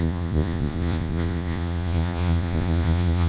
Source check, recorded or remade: remade